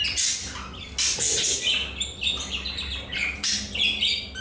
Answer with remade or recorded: recorded